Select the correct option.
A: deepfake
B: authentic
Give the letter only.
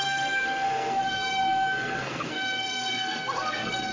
A